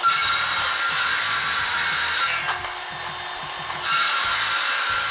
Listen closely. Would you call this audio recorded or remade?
recorded